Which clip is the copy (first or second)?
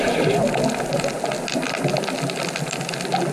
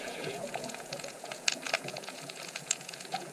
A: second